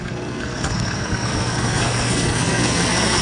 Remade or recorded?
remade